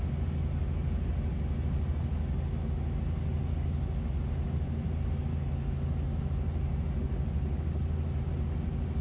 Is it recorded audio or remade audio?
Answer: recorded